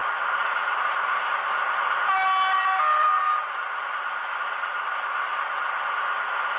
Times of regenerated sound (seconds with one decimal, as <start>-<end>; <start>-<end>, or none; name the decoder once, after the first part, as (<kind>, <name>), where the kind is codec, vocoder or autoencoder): none